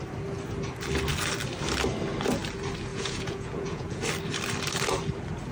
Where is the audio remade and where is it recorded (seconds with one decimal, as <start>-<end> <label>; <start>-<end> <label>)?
0.0-2.9 recorded; 2.9-4.0 remade; 4.0-5.5 recorded